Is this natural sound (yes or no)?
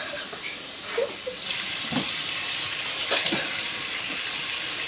yes